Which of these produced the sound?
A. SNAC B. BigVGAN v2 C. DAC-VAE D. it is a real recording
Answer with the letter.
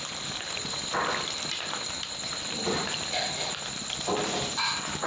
B